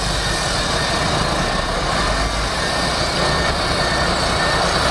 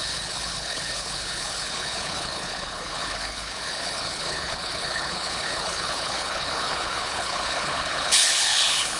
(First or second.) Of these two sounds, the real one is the first